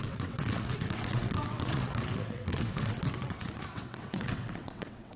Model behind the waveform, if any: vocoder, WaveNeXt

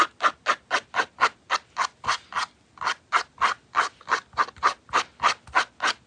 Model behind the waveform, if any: none